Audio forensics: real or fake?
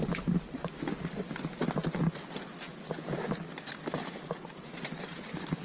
real